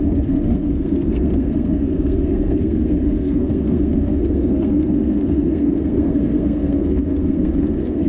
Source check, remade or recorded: remade